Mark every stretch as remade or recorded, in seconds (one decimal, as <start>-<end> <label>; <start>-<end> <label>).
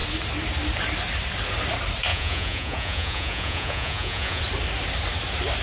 0.0-2.1 recorded; 2.1-4.4 remade; 4.4-5.6 recorded